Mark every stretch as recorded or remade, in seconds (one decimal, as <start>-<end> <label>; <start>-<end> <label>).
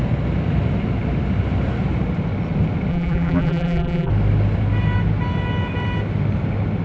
0.0-2.9 recorded; 2.9-4.1 remade; 4.1-6.8 recorded